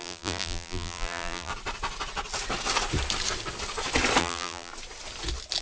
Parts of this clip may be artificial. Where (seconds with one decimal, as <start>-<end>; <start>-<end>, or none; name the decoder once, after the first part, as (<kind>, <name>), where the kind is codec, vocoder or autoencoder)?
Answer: 0.0-1.5 (vocoder, BigVGAN v2); 4.2-4.7